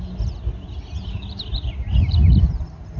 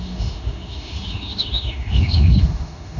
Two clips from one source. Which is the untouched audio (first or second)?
first